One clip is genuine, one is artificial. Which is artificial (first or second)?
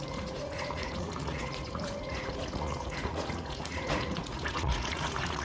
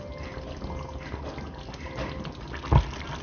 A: first